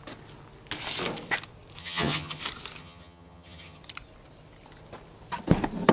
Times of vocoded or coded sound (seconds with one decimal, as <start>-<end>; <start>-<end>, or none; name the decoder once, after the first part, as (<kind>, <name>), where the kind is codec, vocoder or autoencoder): 1.8-2.4 (vocoder, HiFi-GAN); 2.8-3.8